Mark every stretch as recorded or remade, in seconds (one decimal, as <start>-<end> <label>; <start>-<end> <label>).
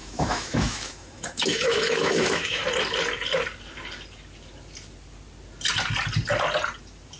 0.0-2.6 remade; 2.6-7.2 recorded